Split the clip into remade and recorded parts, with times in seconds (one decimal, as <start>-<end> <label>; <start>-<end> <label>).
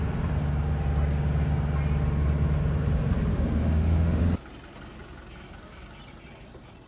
0.0-3.3 recorded; 3.3-4.2 remade; 4.2-6.9 recorded